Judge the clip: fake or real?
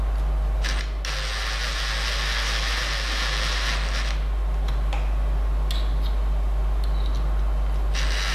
real